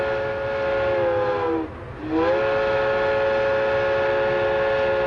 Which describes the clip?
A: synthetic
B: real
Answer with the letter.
B